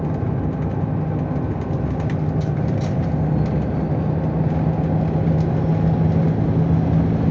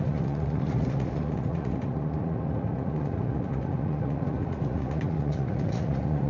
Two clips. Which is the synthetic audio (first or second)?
second